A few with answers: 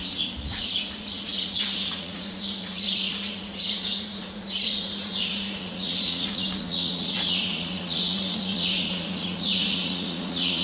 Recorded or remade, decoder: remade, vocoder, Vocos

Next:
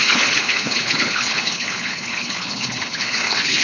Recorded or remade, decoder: remade, codec, HILCodec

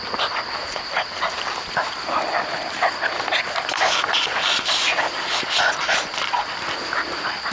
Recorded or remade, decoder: recorded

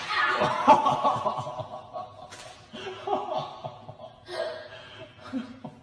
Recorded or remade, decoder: recorded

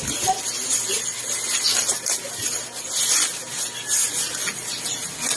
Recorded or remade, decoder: recorded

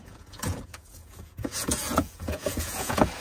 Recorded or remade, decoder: remade, vocoder, Vocos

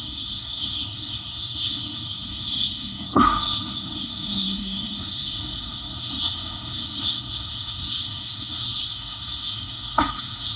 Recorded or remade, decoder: remade, codec, SNAC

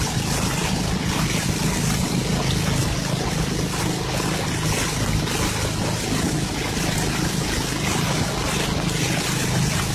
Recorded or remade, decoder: recorded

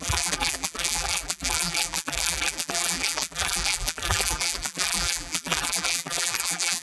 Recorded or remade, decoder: remade, vocoder, BigVGAN v2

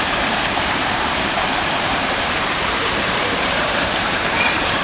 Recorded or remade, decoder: remade, vocoder, BigVGAN v2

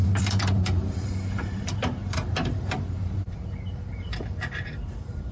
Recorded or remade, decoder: remade, vocoder, BigVGAN v2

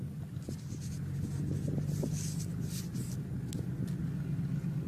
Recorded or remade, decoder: recorded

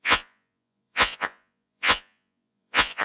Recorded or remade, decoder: remade, vocoder, Vocos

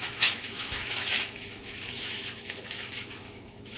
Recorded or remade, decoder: remade, autoencoder, DAC-VAE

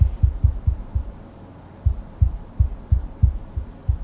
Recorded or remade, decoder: recorded